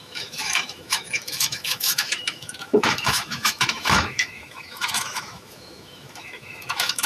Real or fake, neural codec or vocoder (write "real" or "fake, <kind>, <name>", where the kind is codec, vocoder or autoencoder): fake, autoencoder, DAC-VAE